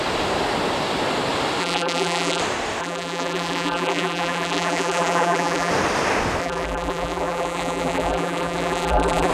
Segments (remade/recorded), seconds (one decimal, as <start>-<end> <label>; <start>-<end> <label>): 0.0-1.6 recorded; 1.6-2.4 remade; 2.4-2.8 recorded; 2.8-5.7 remade; 5.7-6.4 recorded; 6.4-9.3 remade